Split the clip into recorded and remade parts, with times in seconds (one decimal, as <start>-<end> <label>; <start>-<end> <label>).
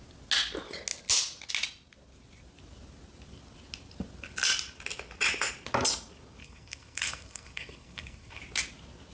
0.0-6.4 recorded; 6.4-8.4 remade; 8.4-9.1 recorded